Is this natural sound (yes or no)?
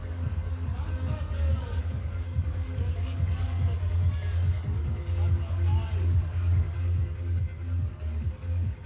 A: no